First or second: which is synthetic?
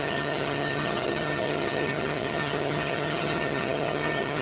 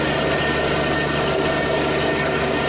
first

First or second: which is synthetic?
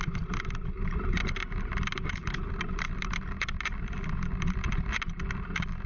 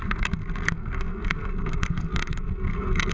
second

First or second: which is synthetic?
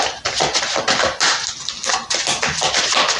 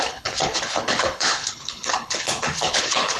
second